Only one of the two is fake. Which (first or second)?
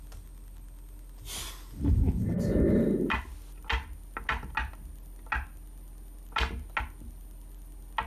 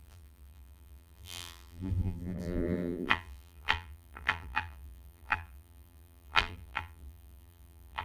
second